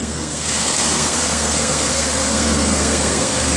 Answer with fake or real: fake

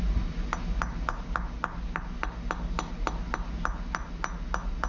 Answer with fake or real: real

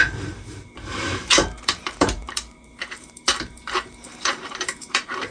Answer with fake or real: fake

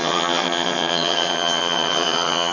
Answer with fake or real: fake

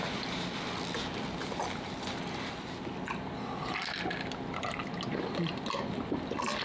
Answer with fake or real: real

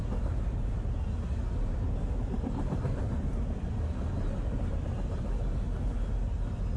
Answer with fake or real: real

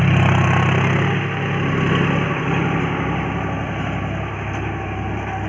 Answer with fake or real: real